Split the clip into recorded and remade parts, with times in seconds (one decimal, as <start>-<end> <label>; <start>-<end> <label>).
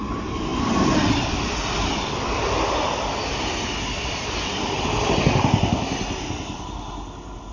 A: 0.0-7.5 recorded